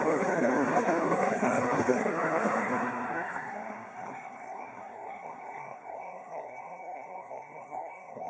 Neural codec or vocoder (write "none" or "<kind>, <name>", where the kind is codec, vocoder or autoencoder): codec, SNAC